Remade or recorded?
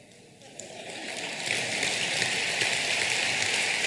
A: recorded